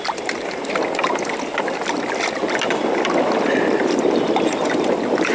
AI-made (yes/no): no